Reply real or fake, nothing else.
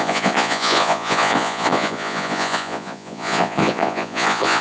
fake